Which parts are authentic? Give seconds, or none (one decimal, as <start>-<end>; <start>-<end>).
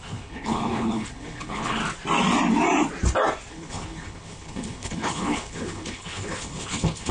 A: 1.8-3.5